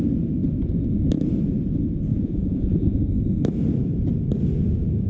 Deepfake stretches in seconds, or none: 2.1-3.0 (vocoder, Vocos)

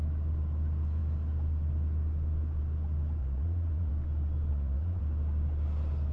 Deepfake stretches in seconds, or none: 3.2-3.9 (vocoder, Vocos); 4.5-5.0